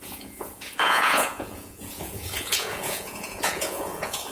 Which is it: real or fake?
fake